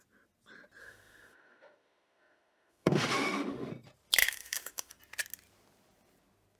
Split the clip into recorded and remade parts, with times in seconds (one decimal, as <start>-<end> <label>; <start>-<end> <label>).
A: 0.0-0.8 recorded; 0.8-3.7 remade; 3.7-4.2 recorded; 4.2-4.9 remade; 4.9-6.6 recorded